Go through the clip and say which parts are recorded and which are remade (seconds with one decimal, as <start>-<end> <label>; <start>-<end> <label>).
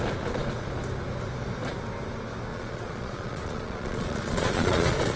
0.0-2.5 recorded; 2.5-5.2 remade